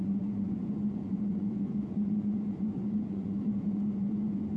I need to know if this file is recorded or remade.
remade